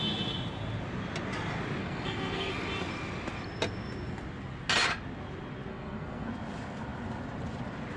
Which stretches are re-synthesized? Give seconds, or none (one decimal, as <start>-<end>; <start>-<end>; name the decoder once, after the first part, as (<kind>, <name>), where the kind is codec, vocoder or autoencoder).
1.8-2.5 (codec, SNAC); 5.7-6.3